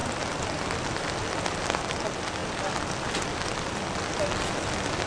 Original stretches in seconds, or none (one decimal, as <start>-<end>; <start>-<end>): 0.0-5.1